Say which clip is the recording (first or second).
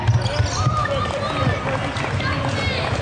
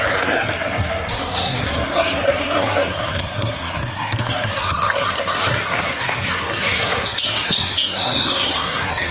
first